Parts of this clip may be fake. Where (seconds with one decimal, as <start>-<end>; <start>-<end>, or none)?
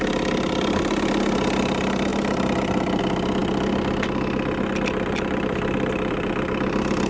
2.1-3.0; 3.4-6.1